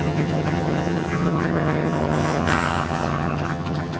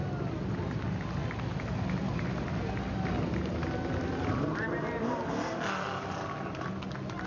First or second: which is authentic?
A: second